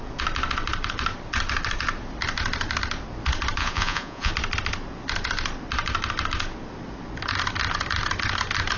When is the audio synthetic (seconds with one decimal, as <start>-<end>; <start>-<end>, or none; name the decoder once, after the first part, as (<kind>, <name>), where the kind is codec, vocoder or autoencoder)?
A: 3.6-4.3 (vocoder, Vocos)

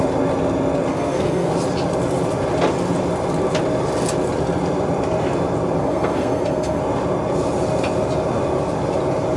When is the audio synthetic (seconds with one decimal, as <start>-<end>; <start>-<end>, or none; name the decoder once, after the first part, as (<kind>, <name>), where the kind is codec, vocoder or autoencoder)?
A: 0.9-1.5 (codec, SNAC); 5.8-6.8

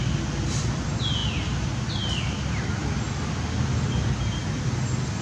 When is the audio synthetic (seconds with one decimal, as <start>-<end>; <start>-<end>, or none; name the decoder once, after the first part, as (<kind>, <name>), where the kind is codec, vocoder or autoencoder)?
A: none

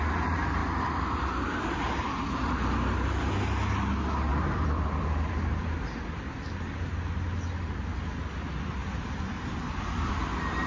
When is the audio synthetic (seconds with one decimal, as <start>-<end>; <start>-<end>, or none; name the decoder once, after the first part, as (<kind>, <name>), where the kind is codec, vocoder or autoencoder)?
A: 0.6-3.3 (vocoder, BigVGAN v2); 4.3-6.0; 8.8-10.1

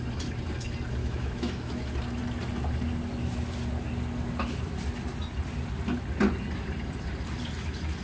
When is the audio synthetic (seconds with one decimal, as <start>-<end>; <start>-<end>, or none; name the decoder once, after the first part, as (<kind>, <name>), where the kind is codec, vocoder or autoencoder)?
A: 1.0-1.8 (autoencoder, DAC-VAE)

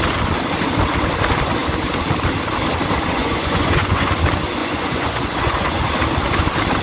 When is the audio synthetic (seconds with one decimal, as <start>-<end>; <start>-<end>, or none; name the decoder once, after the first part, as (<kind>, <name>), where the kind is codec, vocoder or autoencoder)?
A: 3.1-4.1 (vocoder, Vocos); 4.6-5.8

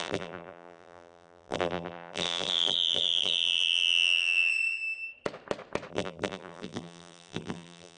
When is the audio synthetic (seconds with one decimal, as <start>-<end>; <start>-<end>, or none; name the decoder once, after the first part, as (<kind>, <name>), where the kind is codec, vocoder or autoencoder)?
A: 0.0-4.5 (vocoder, BigVGAN v2); 5.9-8.0

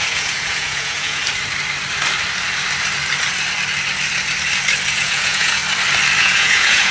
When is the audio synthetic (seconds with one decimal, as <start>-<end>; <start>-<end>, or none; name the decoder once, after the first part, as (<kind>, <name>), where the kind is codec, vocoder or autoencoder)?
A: 0.0-1.2 (vocoder, Vocos); 4.9-5.6; 6.2-6.9